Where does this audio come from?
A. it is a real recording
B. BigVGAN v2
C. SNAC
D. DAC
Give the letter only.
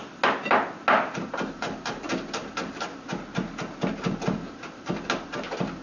A